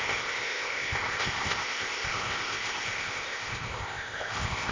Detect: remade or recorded remade